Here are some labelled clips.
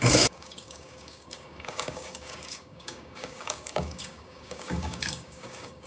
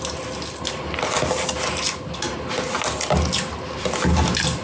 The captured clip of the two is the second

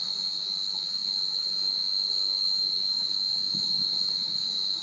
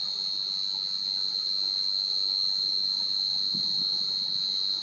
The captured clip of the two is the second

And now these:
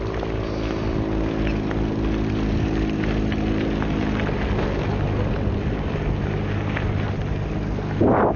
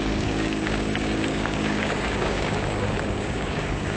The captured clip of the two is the first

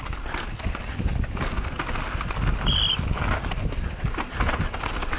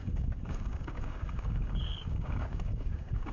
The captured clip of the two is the first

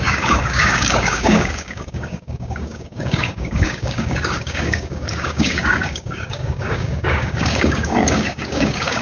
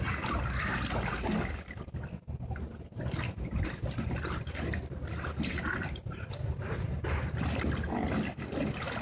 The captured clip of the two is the second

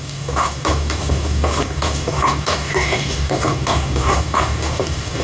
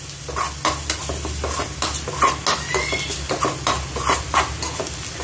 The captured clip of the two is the second